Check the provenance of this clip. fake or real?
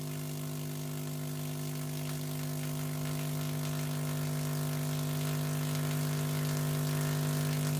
real